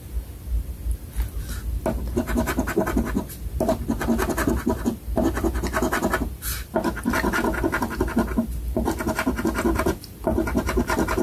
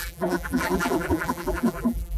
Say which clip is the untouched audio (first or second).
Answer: first